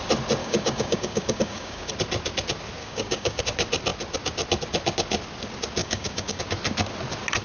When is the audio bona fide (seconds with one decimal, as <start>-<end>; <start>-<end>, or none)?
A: 0.0-0.4; 1.9-2.8; 3.4-5.8; 6.4-7.4